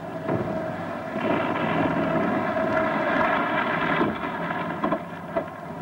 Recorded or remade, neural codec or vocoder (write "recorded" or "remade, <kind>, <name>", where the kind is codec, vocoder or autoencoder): recorded